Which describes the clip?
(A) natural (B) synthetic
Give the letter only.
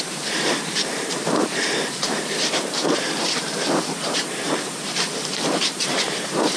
B